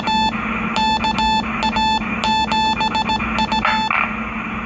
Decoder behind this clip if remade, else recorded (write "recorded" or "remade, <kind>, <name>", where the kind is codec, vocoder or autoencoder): recorded